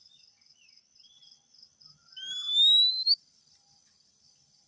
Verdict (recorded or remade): recorded